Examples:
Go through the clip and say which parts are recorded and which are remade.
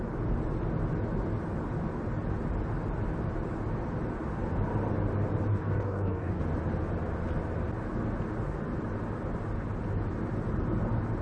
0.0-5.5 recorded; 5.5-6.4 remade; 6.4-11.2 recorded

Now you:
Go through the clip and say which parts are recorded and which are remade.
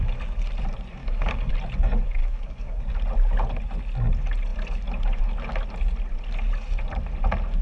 0.0-1.0 recorded; 1.0-1.5 remade; 1.5-2.2 recorded; 2.2-2.8 remade; 2.8-7.6 recorded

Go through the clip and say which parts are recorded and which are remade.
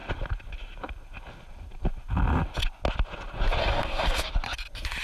0.0-3.6 recorded; 3.6-4.3 remade; 4.3-5.0 recorded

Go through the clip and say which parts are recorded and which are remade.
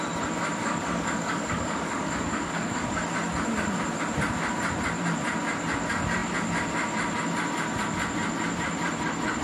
0.0-0.6 recorded; 0.6-3.0 remade; 3.0-9.4 recorded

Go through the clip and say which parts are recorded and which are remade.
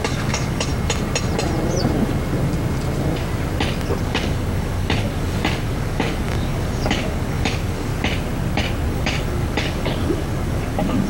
0.0-0.7 remade; 0.7-4.0 recorded; 4.0-7.9 remade; 7.9-8.9 recorded; 8.9-11.1 remade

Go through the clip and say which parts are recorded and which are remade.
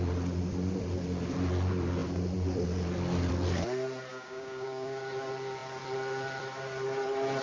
0.0-4.1 recorded; 4.1-5.0 remade; 5.0-7.4 recorded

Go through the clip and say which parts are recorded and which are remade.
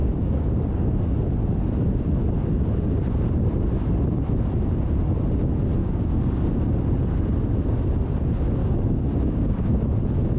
0.0-0.7 remade; 0.7-5.8 recorded; 5.8-6.5 remade; 6.5-8.6 recorded; 8.6-9.7 remade; 9.7-10.4 recorded